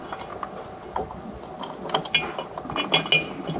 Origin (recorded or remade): recorded